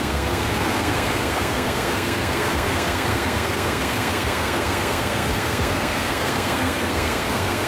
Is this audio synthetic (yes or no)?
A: yes